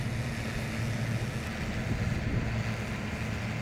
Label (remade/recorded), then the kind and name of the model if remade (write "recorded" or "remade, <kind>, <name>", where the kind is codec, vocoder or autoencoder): recorded